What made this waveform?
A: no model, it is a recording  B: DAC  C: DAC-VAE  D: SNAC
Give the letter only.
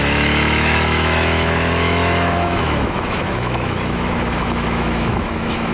C